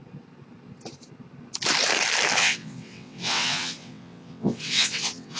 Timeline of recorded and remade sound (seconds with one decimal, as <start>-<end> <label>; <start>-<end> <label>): 0.0-2.4 recorded; 2.4-5.4 remade